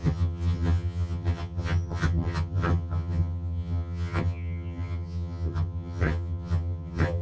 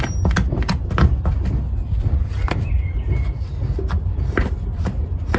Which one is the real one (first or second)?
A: second